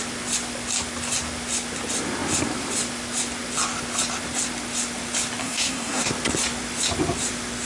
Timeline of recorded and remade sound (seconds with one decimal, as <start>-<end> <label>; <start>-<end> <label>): 0.0-5.4 recorded; 5.4-6.1 remade; 6.1-7.7 recorded